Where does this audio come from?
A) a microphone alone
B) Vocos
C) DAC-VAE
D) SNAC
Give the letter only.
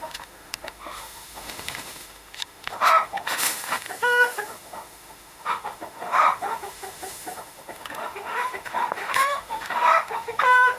C